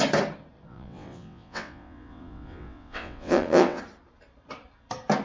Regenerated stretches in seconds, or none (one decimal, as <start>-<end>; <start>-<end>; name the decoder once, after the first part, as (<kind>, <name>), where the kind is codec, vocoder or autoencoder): 0.7-3.8 (vocoder, WaveNeXt)